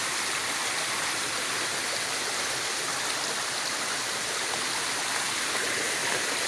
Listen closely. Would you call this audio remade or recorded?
recorded